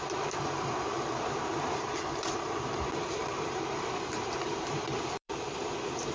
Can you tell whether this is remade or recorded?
remade